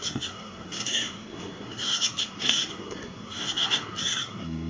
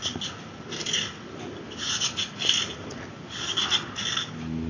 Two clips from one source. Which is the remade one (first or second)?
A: first